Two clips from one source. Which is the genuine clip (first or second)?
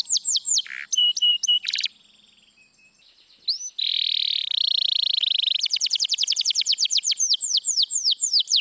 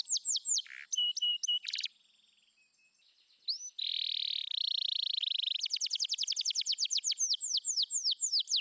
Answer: second